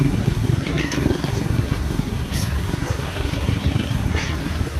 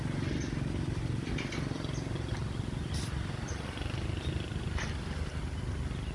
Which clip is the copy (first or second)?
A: first